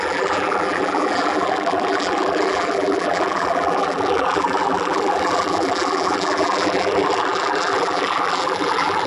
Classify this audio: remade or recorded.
remade